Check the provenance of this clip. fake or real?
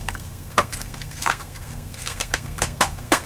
fake